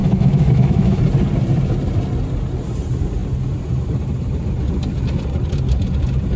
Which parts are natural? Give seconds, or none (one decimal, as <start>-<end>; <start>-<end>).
1.0-6.4